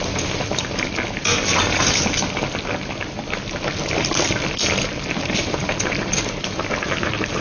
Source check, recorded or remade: recorded